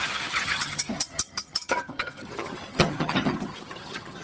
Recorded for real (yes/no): no